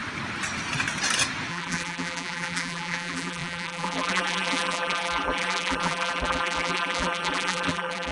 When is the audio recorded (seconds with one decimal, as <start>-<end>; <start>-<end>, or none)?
0.0-1.5